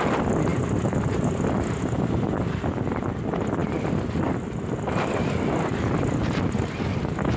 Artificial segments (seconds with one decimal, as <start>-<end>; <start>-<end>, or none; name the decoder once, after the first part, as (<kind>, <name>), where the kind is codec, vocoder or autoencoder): none